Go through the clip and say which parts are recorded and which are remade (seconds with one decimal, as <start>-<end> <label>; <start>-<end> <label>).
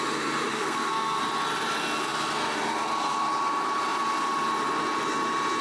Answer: 0.0-0.5 recorded; 0.5-1.2 remade; 1.2-5.6 recorded